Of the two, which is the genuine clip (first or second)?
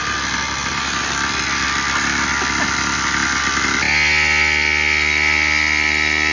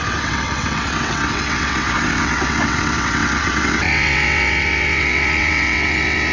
first